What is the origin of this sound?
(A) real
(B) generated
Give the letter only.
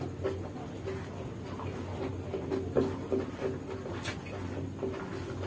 A